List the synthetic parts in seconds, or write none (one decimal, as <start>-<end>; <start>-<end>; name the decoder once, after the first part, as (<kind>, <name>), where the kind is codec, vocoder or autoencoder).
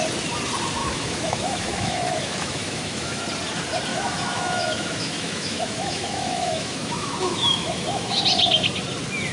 0.8-3.2 (autoencoder, DAC-VAE); 3.9-8.2